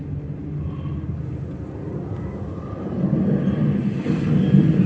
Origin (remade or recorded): recorded